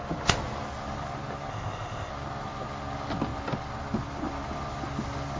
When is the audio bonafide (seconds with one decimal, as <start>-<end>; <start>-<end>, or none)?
0.0-1.5; 2.1-5.4